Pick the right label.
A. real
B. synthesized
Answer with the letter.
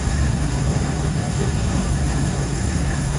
B